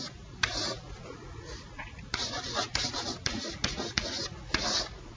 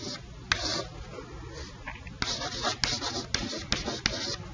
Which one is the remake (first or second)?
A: first